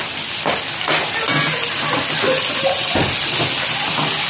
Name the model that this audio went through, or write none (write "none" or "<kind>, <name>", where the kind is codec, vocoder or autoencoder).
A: none